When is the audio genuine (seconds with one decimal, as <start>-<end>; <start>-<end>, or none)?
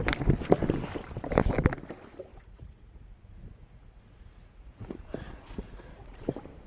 0.0-2.3; 6.3-6.7